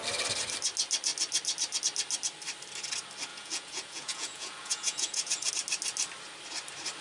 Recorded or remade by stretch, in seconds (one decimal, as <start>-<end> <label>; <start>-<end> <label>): 0.0-3.3 recorded; 3.3-5.5 remade; 5.5-7.0 recorded